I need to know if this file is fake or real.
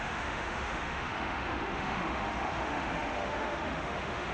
fake